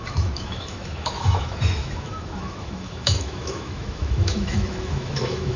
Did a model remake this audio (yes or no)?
yes